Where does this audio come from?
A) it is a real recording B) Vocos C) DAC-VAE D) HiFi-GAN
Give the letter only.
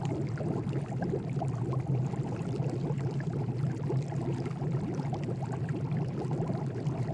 A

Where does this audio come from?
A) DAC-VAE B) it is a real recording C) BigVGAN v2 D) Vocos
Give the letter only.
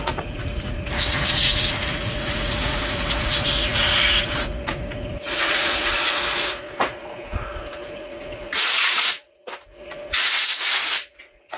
D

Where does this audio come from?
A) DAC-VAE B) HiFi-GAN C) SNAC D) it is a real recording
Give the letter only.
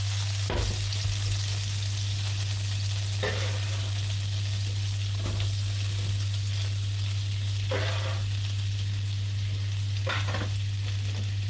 D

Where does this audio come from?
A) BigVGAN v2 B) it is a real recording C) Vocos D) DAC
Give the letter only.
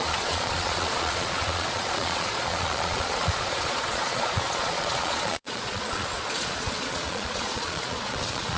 C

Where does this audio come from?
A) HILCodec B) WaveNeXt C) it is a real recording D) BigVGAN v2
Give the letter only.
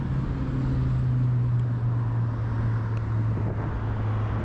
C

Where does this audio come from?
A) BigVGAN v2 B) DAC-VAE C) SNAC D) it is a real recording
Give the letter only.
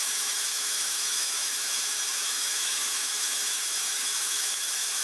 B